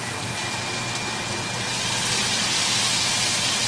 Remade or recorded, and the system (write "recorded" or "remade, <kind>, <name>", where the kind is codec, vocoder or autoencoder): recorded